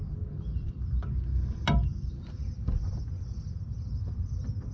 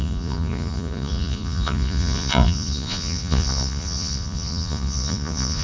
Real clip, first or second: first